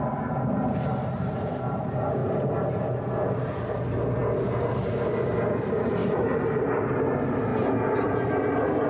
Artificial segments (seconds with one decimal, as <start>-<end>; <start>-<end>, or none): 6.0-6.7